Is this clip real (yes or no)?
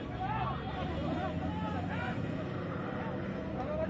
yes